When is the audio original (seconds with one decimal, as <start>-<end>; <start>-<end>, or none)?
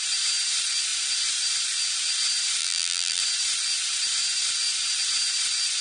0.0-2.6; 3.2-5.8